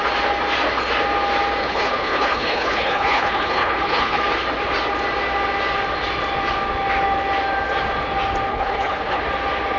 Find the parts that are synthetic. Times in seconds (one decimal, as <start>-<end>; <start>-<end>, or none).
1.6-4.2; 8.5-9.2